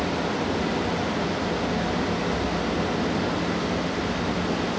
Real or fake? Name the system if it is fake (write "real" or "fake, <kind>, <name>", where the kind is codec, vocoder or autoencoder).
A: real